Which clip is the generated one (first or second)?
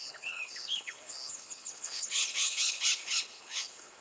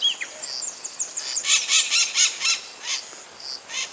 first